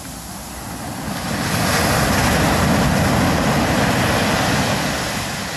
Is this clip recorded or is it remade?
recorded